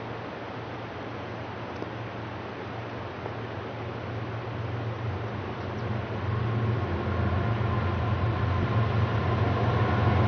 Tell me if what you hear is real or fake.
real